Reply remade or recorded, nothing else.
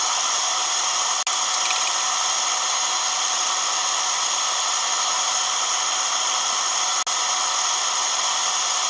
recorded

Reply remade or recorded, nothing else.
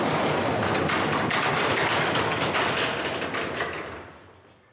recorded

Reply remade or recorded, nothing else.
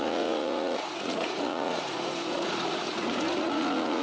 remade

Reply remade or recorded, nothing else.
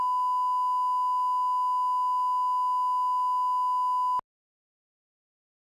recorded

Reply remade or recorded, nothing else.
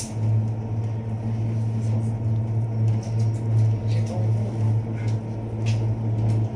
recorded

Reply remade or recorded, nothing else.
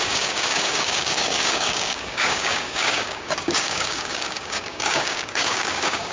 remade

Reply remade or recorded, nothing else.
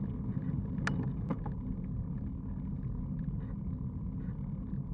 recorded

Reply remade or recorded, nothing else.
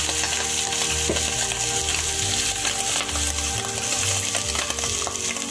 recorded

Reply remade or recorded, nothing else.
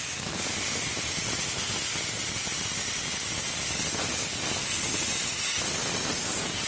recorded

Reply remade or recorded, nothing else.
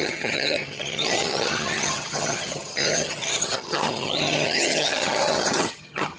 remade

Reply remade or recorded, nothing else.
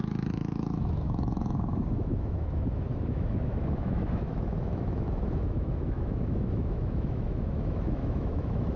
remade